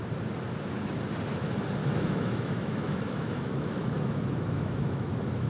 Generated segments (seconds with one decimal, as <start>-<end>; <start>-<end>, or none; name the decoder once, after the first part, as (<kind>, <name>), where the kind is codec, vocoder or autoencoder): 1.8-5.1 (autoencoder, DAC-VAE)